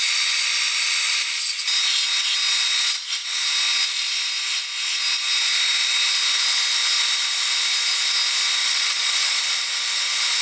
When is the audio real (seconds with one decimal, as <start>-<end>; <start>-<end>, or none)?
0.0-8.6; 9.4-10.4